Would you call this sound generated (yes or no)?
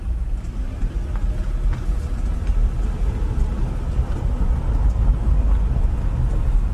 no